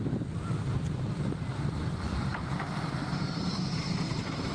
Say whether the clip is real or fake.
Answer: fake